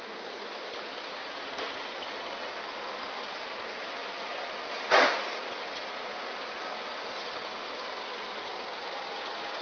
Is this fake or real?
real